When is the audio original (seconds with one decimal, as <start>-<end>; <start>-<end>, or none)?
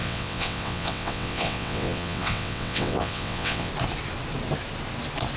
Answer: 3.7-5.4